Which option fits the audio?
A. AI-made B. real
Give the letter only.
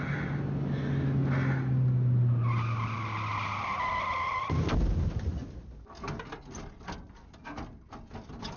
B